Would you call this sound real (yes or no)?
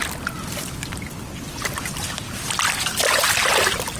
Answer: yes